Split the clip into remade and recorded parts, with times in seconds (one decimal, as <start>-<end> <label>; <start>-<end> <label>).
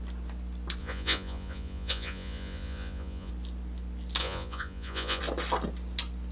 0.0-0.8 recorded; 0.8-3.3 remade; 3.3-4.2 recorded; 4.2-5.2 remade; 5.2-6.3 recorded